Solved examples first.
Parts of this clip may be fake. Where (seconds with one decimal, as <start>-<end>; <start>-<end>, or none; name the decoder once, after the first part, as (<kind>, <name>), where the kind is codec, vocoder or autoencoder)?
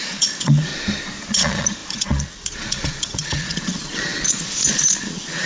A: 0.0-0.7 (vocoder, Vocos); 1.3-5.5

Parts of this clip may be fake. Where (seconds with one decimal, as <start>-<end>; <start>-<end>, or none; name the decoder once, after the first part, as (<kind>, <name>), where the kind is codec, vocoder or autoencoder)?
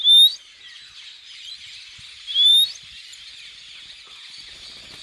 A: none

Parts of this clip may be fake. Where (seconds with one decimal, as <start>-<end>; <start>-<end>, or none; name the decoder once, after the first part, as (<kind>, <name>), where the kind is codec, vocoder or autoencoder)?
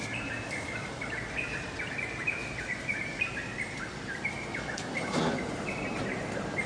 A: 2.4-6.7 (vocoder, BigVGAN v2)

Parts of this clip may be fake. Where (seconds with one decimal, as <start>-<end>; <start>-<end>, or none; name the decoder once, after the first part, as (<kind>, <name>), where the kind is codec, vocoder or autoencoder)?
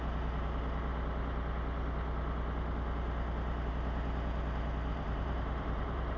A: 4.9-6.2 (vocoder, BigVGAN v2)